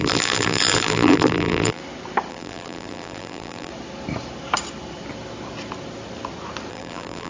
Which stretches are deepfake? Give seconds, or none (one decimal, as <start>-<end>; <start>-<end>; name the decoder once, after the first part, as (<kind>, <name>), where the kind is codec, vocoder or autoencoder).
0.0-1.8 (vocoder, BigVGAN v2); 2.3-3.7; 6.7-7.3